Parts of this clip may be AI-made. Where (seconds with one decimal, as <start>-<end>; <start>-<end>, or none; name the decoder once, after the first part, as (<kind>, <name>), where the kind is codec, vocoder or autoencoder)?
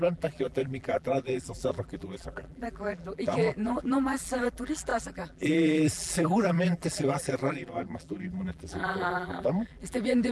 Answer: 0.0-10.3 (vocoder, BigVGAN v2)